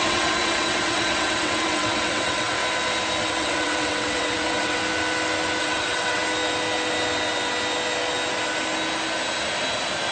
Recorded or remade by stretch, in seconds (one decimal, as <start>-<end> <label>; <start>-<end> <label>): 0.0-2.6 remade; 2.6-3.2 recorded; 3.2-4.8 remade; 4.8-5.6 recorded; 5.6-6.2 remade; 6.2-10.1 recorded